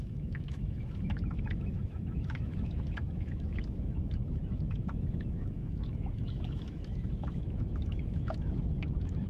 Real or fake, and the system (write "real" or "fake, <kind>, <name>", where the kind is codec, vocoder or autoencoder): fake, autoencoder, DAC-VAE